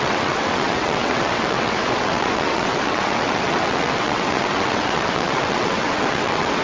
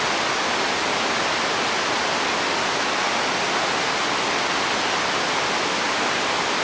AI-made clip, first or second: first